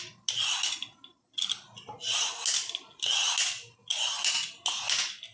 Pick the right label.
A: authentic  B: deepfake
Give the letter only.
A